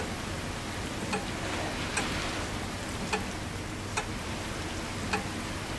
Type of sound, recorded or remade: recorded